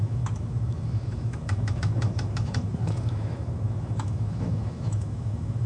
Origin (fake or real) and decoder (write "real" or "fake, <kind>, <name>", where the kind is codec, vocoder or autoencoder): fake, autoencoder, DAC-VAE